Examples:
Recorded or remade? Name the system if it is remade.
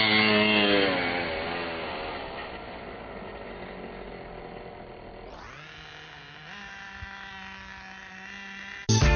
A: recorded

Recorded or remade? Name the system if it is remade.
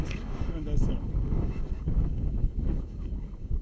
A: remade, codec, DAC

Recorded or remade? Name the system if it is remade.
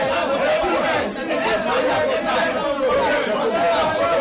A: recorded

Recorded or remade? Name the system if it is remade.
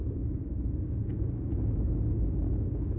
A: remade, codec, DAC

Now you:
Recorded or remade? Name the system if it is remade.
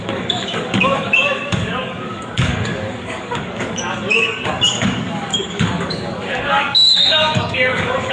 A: remade, codec, DAC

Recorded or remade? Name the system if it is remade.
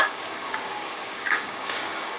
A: remade, codec, DAC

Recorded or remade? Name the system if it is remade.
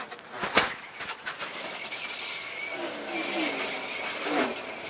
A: recorded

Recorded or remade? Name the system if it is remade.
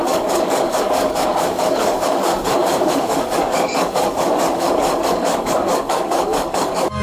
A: remade, codec, DAC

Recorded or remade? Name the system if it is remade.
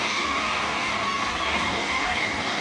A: remade, codec, DAC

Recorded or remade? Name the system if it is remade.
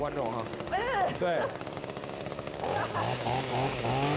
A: remade, codec, DAC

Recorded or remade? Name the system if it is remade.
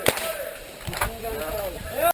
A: recorded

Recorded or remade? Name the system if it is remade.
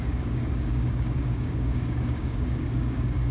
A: remade, codec, DAC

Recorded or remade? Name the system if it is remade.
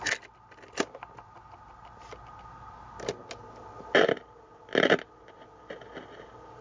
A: recorded